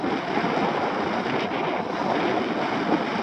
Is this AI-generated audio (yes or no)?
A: no